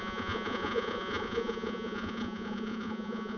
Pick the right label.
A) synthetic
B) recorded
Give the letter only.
A